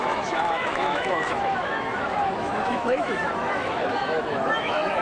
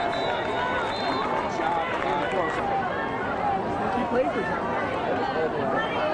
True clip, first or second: second